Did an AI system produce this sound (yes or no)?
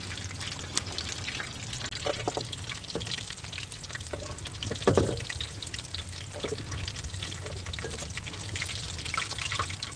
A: no